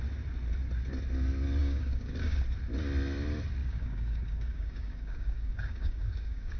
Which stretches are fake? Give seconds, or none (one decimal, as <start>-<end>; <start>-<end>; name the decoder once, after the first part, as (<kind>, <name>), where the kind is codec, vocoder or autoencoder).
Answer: 1.6-2.4 (codec, DAC); 3.6-6.6